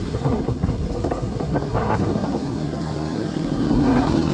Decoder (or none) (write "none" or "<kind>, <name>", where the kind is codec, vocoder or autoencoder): codec, SNAC